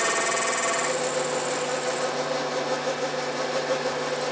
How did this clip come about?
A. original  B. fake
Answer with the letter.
A